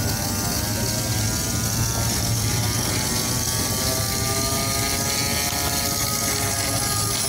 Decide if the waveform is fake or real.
real